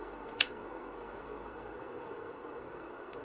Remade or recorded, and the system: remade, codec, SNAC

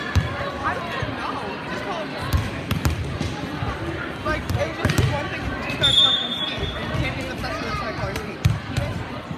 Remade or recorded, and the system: remade, vocoder, BigVGAN v2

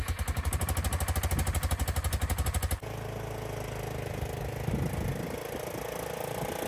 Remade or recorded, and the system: recorded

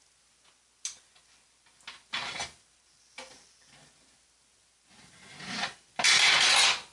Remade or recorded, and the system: recorded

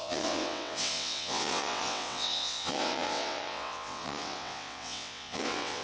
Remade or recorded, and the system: remade, vocoder, WaveNeXt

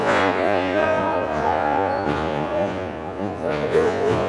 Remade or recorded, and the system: remade, vocoder, Vocos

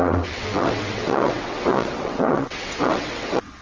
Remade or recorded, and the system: remade, vocoder, WaveNeXt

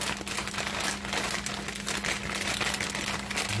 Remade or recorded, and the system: recorded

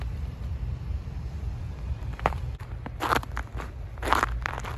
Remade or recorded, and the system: remade, vocoder, BigVGAN v2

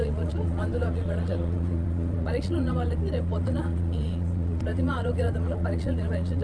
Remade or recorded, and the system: remade, vocoder, Vocos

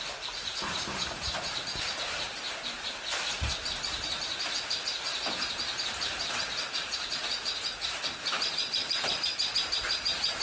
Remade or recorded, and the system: remade, vocoder, BigVGAN v2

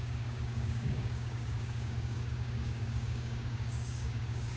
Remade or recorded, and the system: remade, codec, DAC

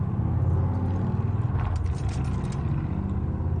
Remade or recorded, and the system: recorded